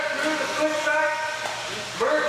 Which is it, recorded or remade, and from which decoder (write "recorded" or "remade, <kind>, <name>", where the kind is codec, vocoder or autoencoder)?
recorded